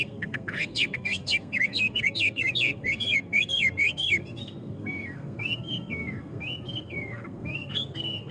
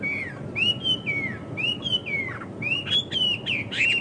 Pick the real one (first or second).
second